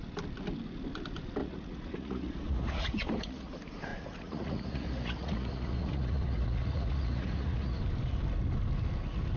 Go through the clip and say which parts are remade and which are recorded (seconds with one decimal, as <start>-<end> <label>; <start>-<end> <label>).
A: 0.0-1.4 recorded; 1.4-3.5 remade; 3.5-3.9 recorded; 3.9-7.8 remade; 7.8-9.4 recorded